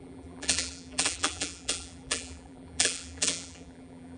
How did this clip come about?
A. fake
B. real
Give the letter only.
A